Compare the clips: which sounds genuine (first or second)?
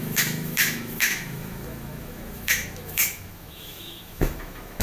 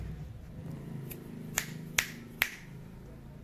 second